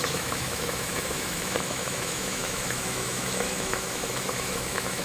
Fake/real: fake